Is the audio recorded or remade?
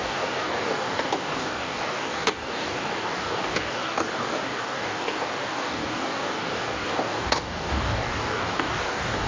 remade